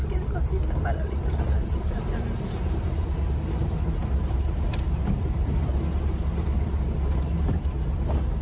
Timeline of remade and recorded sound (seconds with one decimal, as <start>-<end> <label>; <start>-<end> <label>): 0.0-0.5 remade; 0.5-1.6 recorded; 1.6-5.6 remade; 5.6-8.4 recorded